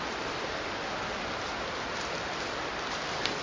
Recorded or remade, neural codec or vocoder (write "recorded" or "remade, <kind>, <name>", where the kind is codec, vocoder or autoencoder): recorded